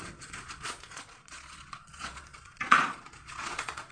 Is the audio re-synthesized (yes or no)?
yes